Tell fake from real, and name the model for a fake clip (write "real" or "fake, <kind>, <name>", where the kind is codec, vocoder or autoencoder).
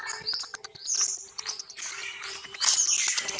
real